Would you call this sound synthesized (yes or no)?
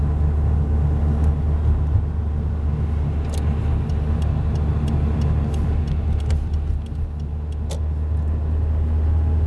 no